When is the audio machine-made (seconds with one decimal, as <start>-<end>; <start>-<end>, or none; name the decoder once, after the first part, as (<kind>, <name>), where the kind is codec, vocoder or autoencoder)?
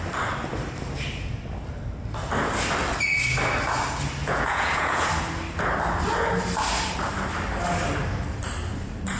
4.2-5.1 (vocoder, Vocos)